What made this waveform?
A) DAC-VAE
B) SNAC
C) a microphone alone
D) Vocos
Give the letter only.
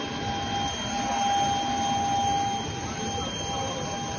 C